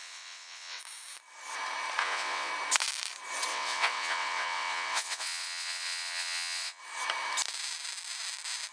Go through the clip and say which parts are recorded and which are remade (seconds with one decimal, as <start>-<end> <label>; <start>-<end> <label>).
0.0-0.8 remade; 0.8-2.0 recorded; 2.0-2.5 remade; 2.5-3.5 recorded; 3.5-6.8 remade; 6.8-8.7 recorded